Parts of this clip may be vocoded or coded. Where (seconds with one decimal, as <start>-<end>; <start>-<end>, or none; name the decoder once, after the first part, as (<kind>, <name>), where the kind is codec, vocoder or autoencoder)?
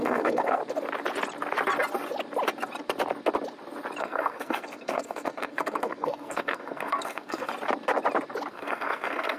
0.0-0.6 (codec, SNAC); 4.0-7.5; 8.5-9.4